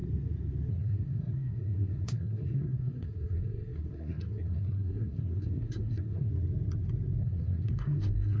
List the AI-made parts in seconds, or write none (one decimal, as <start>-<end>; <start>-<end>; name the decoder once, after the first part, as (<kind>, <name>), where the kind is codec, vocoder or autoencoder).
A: 0.7-6.3 (codec, SNAC); 7.2-8.4